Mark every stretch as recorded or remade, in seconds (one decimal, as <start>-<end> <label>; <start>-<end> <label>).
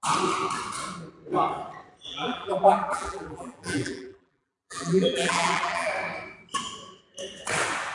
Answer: 0.0-2.1 recorded; 2.1-5.9 remade; 5.9-7.9 recorded